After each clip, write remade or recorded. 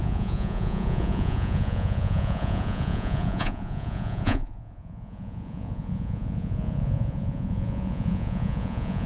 remade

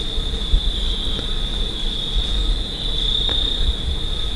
recorded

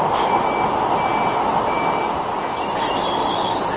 recorded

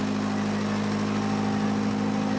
recorded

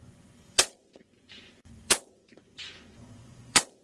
remade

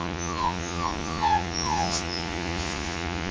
remade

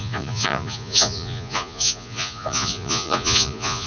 remade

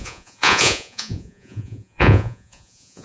remade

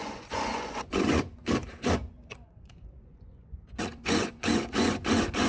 remade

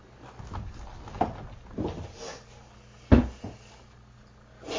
recorded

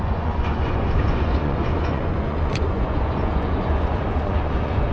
remade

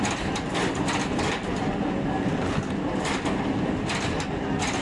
recorded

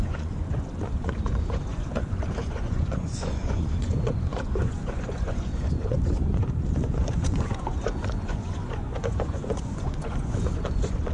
remade